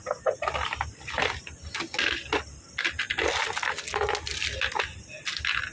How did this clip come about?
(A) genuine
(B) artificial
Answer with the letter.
A